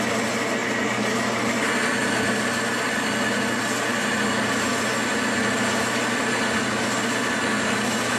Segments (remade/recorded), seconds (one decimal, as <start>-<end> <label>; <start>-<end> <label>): 0.0-8.2 recorded